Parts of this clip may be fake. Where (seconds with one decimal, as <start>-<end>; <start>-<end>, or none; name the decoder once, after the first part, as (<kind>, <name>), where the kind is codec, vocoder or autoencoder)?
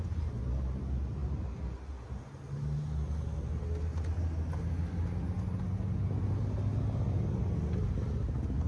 none